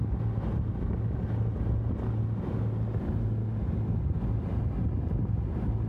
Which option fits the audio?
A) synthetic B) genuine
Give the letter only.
B